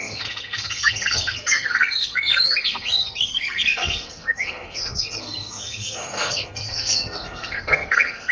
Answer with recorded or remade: remade